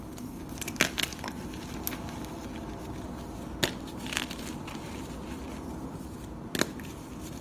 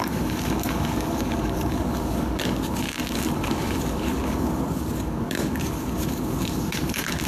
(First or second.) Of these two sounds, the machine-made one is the second